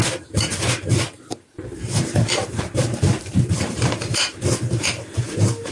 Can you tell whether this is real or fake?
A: fake